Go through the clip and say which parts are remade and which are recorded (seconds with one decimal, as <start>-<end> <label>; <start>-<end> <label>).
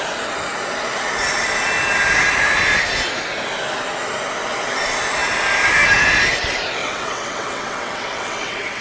0.0-6.8 recorded; 6.8-8.8 remade